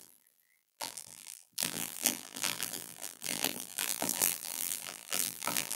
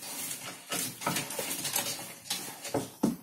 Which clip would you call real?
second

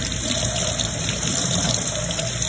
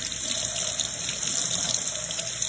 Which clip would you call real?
second